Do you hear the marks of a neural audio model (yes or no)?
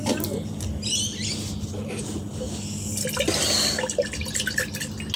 no